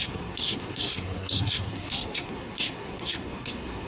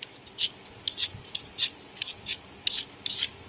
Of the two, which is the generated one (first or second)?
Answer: first